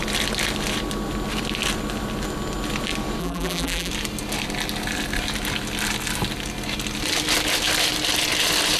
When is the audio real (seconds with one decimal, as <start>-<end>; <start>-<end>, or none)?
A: 0.0-3.2; 3.9-8.8